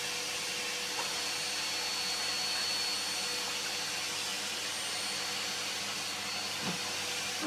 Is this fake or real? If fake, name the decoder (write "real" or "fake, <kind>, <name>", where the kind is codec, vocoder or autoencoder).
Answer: real